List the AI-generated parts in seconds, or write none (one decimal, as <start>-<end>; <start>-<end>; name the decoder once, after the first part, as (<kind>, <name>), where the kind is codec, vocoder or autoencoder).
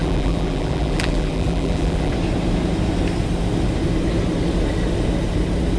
0.0-2.1 (vocoder, BigVGAN v2)